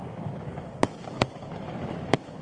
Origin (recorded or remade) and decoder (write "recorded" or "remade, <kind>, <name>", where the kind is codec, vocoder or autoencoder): remade, codec, DAC